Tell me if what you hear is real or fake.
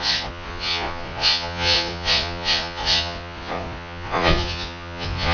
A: fake